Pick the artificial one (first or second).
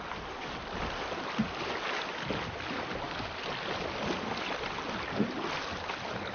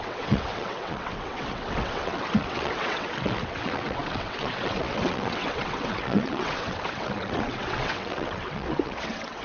second